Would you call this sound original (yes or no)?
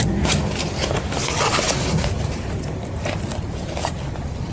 yes